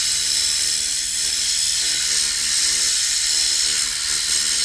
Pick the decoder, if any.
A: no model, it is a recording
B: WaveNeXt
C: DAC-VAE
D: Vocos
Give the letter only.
A